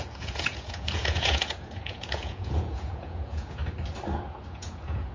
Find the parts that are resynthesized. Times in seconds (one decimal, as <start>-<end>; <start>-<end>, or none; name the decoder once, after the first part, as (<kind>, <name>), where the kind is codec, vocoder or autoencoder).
0.0-3.6 (vocoder, Vocos); 4.5-5.1